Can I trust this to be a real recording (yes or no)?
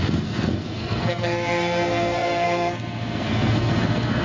no